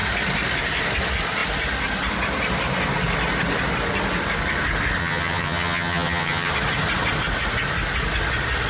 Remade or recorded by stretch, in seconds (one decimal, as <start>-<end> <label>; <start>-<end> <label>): 0.0-5.0 recorded; 5.0-6.5 remade; 6.5-8.7 recorded